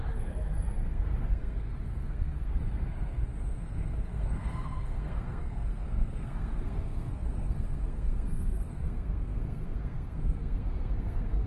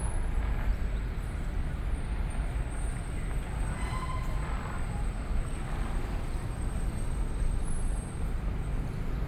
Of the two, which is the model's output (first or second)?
first